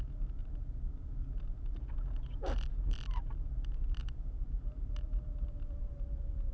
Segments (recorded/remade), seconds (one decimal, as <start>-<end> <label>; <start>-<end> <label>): 0.0-0.4 remade; 0.4-4.0 recorded; 4.0-6.5 remade